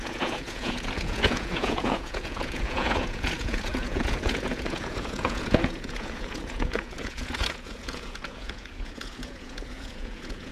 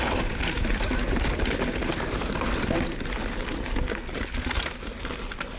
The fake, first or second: first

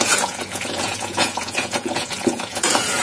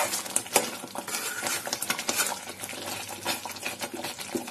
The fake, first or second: first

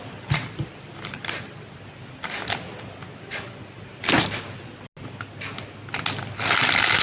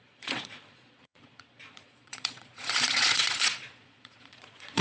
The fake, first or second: second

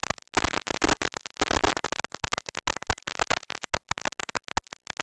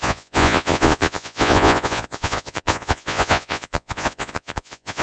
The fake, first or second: second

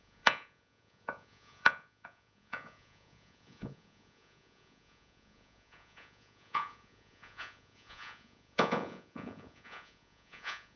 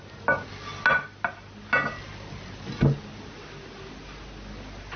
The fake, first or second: first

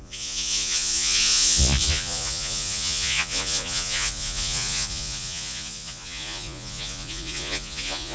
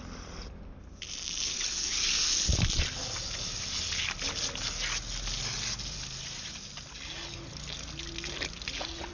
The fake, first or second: first